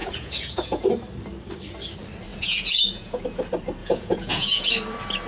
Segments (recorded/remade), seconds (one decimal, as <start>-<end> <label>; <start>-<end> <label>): 0.0-0.9 remade; 0.9-2.3 recorded; 2.3-3.2 remade; 3.2-3.8 recorded; 3.8-4.7 remade; 4.7-5.3 recorded